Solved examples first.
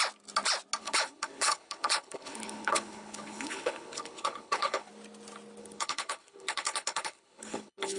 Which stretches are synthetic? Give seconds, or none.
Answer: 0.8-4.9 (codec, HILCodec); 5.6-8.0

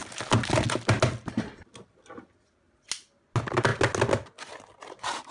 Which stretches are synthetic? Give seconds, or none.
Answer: none

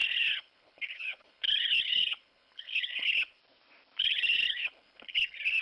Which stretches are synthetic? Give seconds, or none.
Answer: 0.0-3.4 (codec, HILCodec); 4.0-5.6

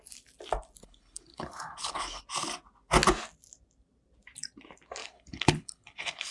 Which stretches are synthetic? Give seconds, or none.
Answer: 0.8-2.2 (codec, HILCodec); 5.0-6.3

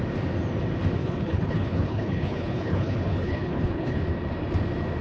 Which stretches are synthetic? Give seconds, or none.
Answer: 1.0-4.0 (codec, HILCodec)

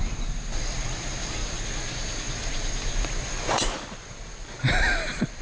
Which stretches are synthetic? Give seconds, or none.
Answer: none

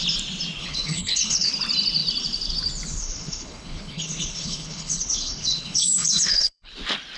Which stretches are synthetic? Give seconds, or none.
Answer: 0.6-1.5 (codec, HILCodec); 3.0-6.7